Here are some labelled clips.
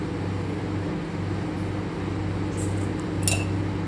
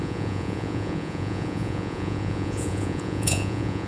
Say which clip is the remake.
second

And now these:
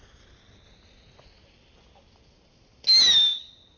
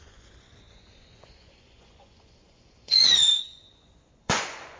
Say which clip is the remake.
second